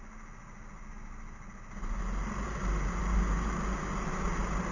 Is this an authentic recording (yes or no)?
yes